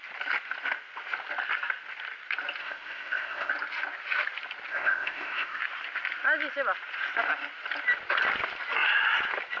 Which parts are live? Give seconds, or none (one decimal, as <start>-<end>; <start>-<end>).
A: 0.0-2.6; 3.5-4.7; 5.6-9.6